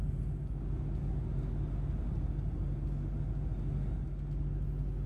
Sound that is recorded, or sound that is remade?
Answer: recorded